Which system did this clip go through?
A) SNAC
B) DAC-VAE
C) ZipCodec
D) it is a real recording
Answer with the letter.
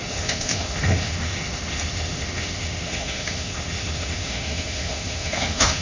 B